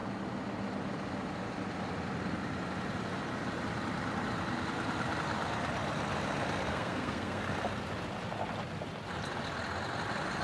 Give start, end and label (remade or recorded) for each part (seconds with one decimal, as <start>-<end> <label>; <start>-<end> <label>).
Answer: 0.0-6.7 recorded; 6.7-7.4 remade; 7.4-10.4 recorded